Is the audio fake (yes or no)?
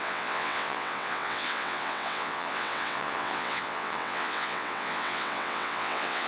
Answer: yes